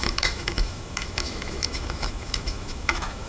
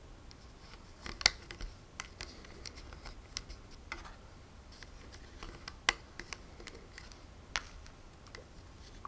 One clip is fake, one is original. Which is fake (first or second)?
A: first